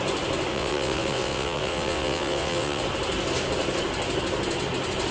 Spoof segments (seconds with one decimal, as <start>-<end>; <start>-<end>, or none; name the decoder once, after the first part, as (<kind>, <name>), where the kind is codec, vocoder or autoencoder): 0.5-2.8 (vocoder, WaveNeXt)